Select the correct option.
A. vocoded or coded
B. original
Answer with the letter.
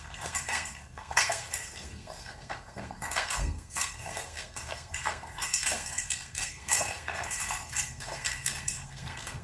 A